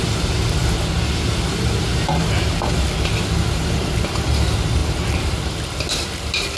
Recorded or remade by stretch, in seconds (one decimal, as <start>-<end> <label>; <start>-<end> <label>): 0.0-6.6 recorded